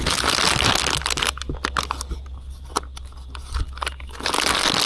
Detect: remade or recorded recorded